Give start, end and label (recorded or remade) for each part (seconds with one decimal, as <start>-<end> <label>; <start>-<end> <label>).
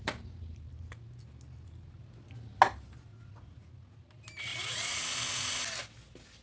0.0-3.1 recorded; 3.1-3.7 remade; 3.7-4.5 recorded; 4.5-5.0 remade; 5.0-6.4 recorded